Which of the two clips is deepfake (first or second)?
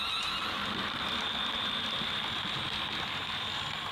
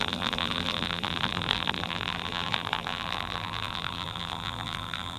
second